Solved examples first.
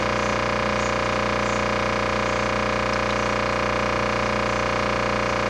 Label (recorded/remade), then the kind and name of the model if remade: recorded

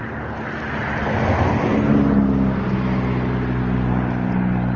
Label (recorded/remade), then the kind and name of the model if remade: recorded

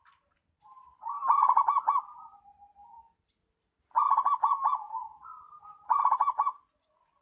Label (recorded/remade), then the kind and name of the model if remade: recorded